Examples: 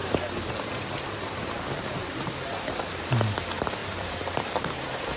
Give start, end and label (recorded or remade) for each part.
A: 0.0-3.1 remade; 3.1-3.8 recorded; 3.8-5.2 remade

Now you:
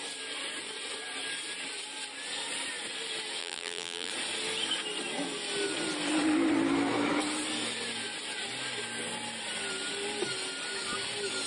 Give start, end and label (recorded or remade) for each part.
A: 0.0-3.4 recorded; 3.4-4.1 remade; 4.1-11.5 recorded